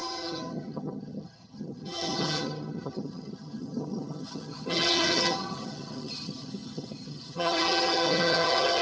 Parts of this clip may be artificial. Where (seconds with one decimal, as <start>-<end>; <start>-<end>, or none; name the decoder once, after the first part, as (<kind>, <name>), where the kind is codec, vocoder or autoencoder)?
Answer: 0.0-8.8 (vocoder, HiFi-GAN)